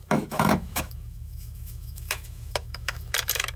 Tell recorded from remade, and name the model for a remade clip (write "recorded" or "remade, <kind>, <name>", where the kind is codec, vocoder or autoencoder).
remade, autoencoder, DAC-VAE